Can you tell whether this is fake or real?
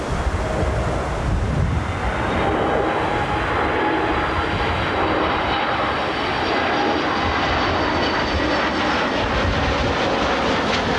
real